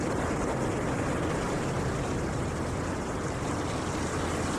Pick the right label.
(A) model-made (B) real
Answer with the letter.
B